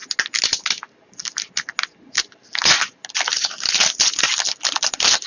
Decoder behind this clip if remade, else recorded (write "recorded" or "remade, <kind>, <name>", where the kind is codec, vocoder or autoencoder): recorded